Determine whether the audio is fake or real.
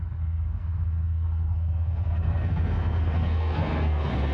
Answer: fake